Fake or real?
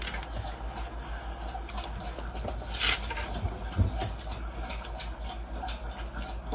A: real